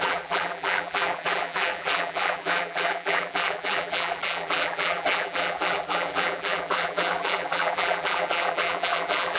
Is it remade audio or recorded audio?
remade